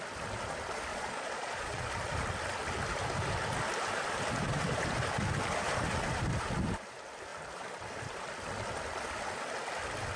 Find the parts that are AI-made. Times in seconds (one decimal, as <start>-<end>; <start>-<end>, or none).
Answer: 0.9-1.9